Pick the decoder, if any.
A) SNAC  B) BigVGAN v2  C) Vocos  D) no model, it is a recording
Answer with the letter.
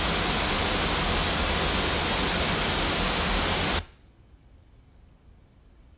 D